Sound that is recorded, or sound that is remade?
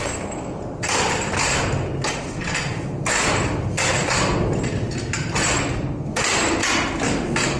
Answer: recorded